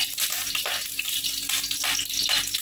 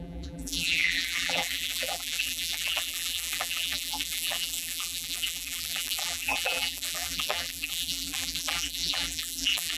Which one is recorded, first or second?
first